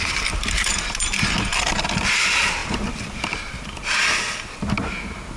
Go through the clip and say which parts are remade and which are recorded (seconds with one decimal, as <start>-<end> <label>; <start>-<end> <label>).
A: 0.0-5.4 recorded